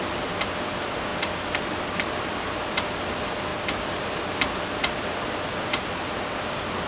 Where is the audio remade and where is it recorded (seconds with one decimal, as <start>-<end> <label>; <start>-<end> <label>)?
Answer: 0.0-6.9 recorded